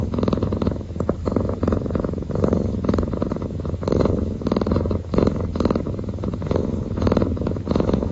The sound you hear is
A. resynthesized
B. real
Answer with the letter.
A